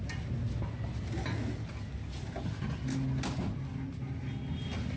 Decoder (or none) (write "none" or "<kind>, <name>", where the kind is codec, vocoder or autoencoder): none